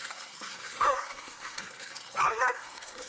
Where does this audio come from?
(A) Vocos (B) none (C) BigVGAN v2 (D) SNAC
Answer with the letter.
D